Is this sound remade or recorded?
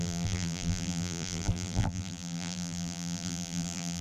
remade